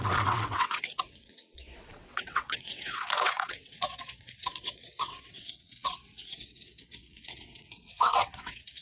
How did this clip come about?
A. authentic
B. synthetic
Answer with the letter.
B